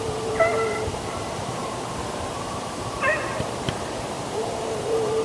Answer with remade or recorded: remade